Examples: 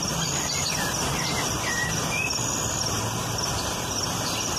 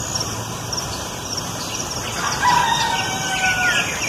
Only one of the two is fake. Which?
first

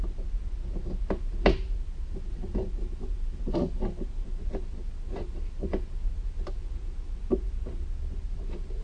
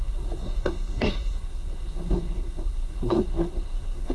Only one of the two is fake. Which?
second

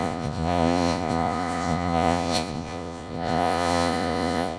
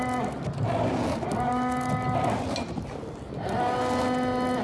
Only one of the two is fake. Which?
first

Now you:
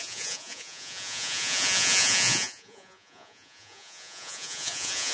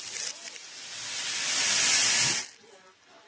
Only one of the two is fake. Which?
first